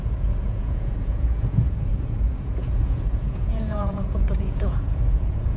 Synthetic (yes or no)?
yes